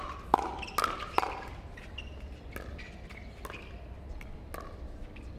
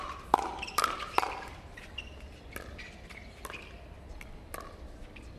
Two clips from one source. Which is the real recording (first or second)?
first